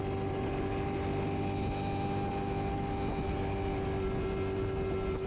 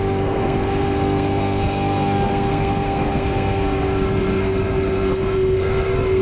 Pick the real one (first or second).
first